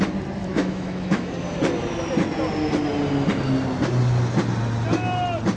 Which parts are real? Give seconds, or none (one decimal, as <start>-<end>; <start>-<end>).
0.0-0.4; 1.3-5.6